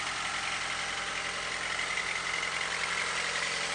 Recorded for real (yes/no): yes